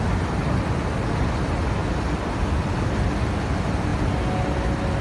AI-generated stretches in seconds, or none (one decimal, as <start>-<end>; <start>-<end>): none